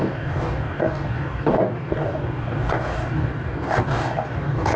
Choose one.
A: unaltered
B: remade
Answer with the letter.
B